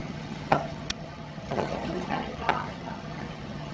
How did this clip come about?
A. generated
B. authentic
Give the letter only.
A